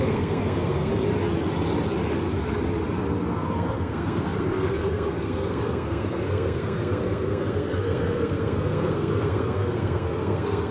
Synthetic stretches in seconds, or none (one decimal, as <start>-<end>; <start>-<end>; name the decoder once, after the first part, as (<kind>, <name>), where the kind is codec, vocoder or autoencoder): 0.0-0.9 (codec, SNAC); 3.2-10.7